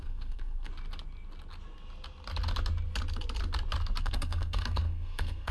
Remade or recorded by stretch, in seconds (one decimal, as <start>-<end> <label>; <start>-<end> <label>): 0.0-0.7 remade; 0.7-4.0 recorded; 4.0-5.5 remade

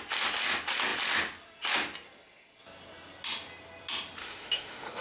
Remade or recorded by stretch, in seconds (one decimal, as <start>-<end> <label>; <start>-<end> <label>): 0.0-4.2 recorded; 4.2-5.0 remade

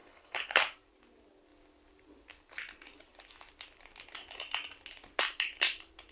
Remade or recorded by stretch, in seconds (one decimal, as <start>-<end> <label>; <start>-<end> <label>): 0.0-0.6 remade; 0.6-6.1 recorded

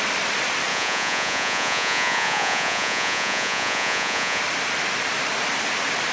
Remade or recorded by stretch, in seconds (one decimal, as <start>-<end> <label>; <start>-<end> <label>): 0.0-0.7 recorded; 0.7-4.4 remade; 4.4-6.1 recorded